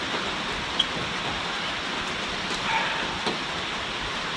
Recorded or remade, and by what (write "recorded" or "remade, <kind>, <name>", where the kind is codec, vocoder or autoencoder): recorded